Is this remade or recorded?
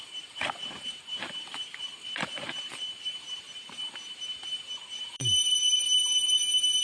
remade